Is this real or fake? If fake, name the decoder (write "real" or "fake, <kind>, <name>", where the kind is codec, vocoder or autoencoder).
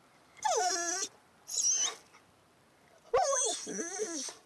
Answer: real